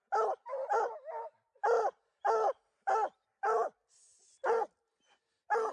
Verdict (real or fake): real